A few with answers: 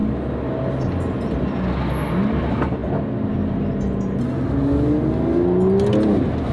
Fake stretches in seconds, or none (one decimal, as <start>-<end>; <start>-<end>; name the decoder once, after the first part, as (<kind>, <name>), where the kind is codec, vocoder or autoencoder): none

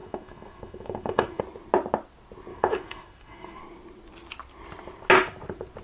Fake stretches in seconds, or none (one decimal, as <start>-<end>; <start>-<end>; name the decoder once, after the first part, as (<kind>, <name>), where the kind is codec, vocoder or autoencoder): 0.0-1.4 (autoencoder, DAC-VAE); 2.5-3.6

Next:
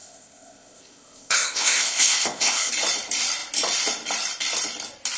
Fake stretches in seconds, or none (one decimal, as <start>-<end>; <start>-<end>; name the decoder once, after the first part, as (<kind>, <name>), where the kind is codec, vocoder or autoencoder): 0.0-2.7 (codec, ZipCodec)

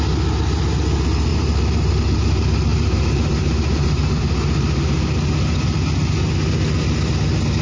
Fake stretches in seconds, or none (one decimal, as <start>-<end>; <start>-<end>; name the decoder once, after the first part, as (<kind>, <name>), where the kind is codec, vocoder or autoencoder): 1.3-1.9 (vocoder, BigVGAN v2); 2.7-4.2